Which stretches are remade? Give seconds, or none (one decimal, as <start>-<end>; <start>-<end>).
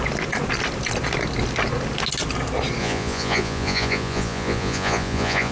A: 2.8-5.5